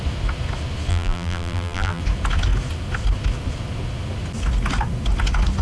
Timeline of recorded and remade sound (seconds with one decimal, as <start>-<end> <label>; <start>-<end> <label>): 0.0-0.9 recorded; 0.9-2.0 remade; 2.0-5.6 recorded